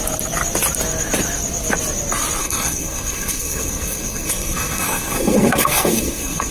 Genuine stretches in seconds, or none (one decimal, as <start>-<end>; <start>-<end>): 0.0-2.4